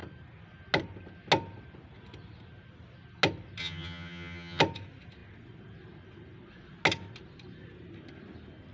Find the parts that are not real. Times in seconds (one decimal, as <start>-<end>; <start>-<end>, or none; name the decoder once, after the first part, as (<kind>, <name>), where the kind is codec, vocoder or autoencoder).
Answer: 3.6-4.6 (vocoder, HiFi-GAN)